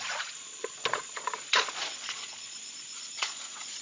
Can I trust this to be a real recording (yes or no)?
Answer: no